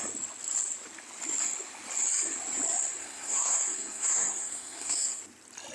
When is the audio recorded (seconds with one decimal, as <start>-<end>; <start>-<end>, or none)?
0.0-3.0; 5.2-5.7

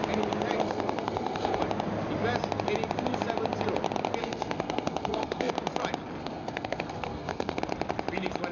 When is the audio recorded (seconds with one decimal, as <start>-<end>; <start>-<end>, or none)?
0.0-0.6; 1.6-4.2; 5.5-6.2; 7.6-8.5

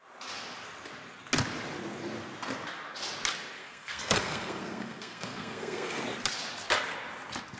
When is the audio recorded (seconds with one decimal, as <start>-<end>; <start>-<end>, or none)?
0.0-3.6; 6.0-7.6